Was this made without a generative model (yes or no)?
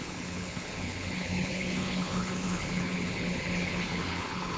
no